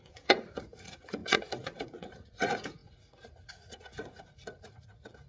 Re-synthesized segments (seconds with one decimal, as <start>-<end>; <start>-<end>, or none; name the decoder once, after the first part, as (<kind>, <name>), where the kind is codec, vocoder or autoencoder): 0.0-5.3 (vocoder, Vocos)